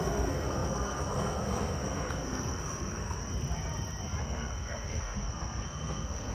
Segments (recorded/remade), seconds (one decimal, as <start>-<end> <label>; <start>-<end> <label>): 0.0-3.2 remade; 3.2-4.2 recorded; 4.2-6.3 remade